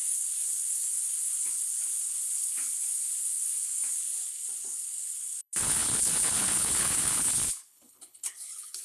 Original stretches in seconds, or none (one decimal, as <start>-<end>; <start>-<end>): none